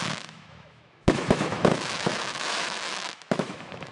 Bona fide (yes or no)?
no